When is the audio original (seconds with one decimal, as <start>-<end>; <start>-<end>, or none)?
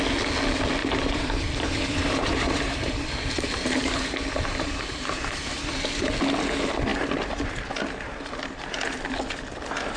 0.0-0.8; 5.8-10.0